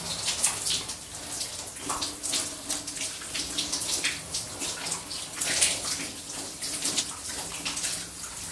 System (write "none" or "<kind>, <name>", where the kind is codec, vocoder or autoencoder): none